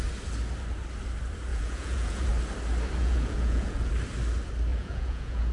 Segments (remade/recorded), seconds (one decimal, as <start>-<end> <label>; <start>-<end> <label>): 0.0-1.5 recorded; 1.5-2.3 remade; 2.3-3.0 recorded; 3.0-3.9 remade; 3.9-4.7 recorded; 4.7-5.5 remade